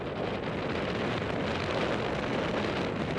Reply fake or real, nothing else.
real